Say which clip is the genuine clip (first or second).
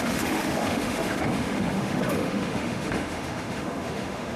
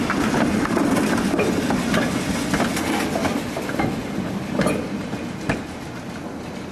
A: second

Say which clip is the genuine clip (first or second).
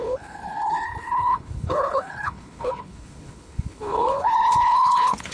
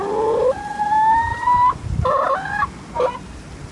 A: second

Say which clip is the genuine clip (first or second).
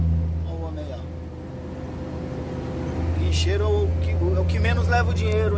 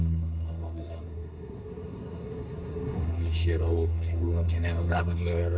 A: first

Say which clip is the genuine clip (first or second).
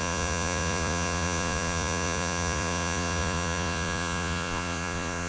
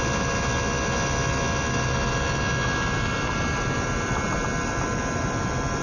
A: second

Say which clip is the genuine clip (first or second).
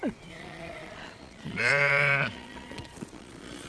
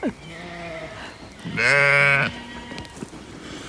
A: second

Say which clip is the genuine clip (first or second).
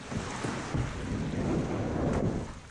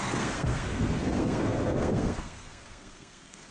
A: first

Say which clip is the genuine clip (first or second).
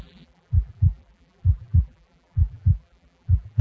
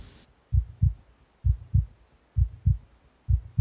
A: second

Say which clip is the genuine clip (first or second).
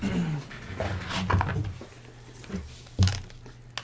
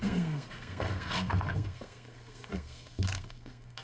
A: first